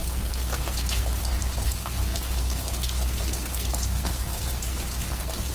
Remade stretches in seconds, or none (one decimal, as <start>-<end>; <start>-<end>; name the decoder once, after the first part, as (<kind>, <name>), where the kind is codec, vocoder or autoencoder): 0.0-5.5 (codec, SNAC)